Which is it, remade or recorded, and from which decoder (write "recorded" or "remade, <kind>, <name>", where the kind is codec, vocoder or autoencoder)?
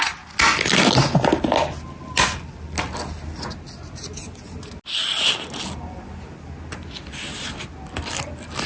recorded